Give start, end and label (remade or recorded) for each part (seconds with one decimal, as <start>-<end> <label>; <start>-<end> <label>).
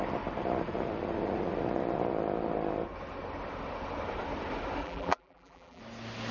0.0-4.8 recorded; 4.8-5.8 remade; 5.8-6.3 recorded